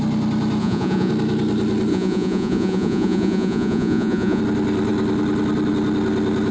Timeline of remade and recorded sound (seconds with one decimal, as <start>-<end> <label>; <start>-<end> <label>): 0.0-0.6 recorded; 0.6-1.1 remade; 1.1-1.9 recorded; 1.9-4.4 remade; 4.4-6.5 recorded